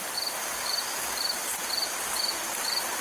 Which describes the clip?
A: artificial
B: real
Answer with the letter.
A